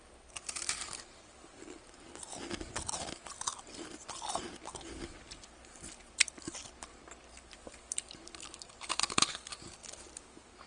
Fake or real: fake